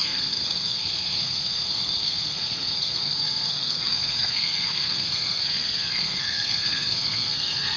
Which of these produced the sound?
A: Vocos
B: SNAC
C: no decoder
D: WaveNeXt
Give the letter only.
B